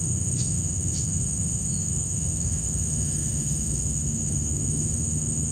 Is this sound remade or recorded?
remade